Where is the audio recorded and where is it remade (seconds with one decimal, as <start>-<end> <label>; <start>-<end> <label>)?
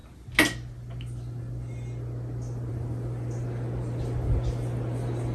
0.0-5.3 recorded